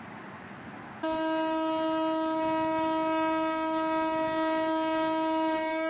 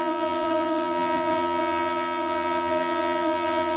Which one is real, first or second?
first